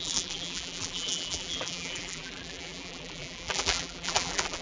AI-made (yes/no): yes